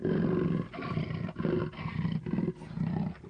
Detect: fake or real real